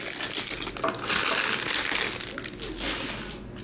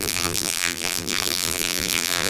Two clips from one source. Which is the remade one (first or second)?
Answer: second